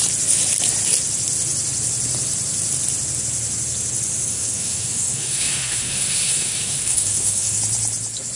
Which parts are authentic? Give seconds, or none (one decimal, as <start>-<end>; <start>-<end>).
0.0-4.3; 7.6-8.4